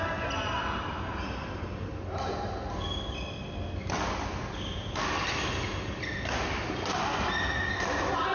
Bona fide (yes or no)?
yes